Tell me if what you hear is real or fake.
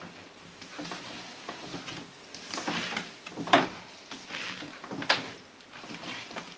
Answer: real